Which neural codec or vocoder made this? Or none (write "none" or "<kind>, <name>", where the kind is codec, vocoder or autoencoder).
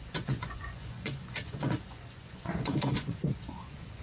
vocoder, Vocos